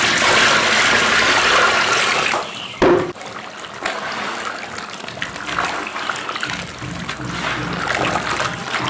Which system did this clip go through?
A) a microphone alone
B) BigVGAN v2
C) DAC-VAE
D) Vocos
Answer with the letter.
A